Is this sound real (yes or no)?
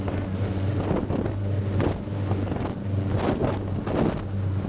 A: yes